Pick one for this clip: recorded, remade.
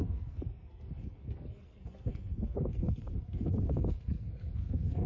remade